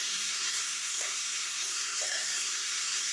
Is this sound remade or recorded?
remade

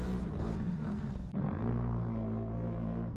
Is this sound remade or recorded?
remade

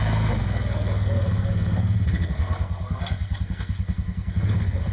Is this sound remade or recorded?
remade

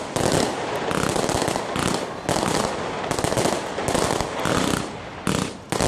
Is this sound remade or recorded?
recorded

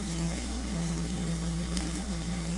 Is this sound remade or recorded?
remade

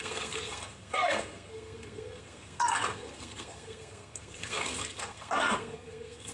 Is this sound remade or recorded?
remade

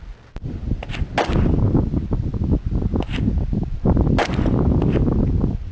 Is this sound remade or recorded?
recorded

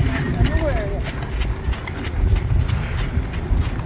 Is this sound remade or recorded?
recorded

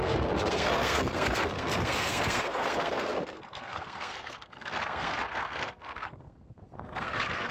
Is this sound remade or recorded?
remade